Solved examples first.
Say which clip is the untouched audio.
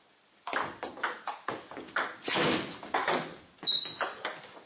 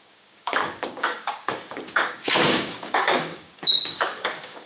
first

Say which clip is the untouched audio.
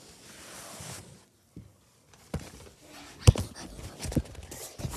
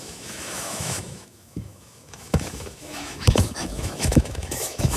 first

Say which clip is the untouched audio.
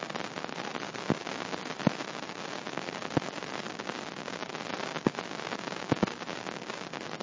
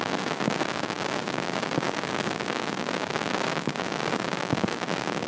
first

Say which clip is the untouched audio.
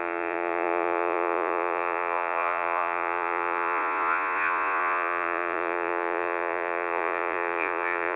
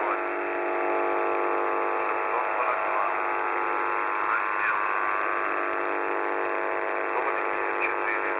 second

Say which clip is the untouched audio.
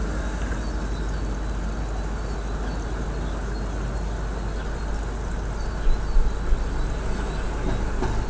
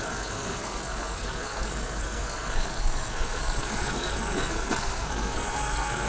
first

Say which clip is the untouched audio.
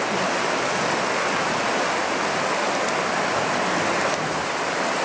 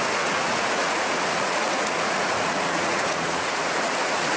first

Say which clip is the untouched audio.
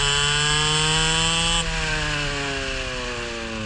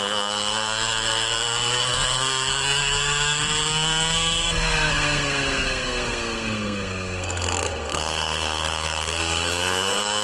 first